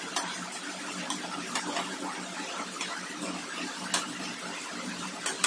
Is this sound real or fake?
real